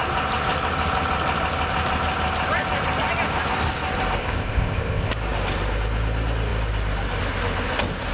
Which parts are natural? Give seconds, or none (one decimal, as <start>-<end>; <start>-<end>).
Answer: 0.0-4.2; 5.1-8.1